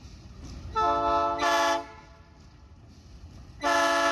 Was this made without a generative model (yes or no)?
yes